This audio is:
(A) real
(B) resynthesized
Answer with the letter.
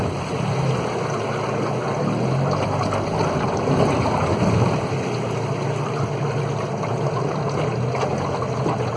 A